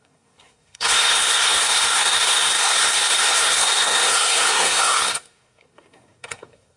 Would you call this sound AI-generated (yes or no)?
yes